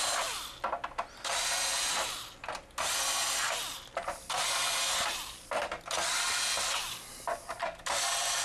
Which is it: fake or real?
real